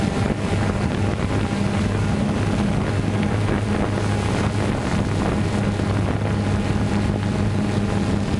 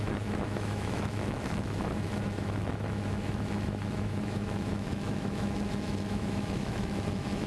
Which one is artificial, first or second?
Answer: second